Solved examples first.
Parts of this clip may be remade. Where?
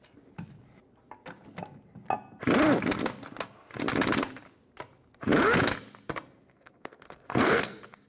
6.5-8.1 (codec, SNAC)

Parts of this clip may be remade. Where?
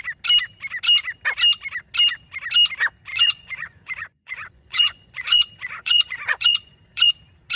3.1-7.1 (vocoder, Vocos)